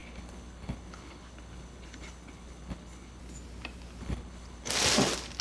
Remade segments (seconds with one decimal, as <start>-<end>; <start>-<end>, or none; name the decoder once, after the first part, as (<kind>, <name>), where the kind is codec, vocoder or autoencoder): 0.0-3.2 (codec, HILCodec); 4.0-4.7